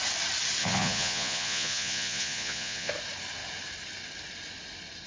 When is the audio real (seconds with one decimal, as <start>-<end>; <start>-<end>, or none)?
0.0-0.6; 2.9-5.1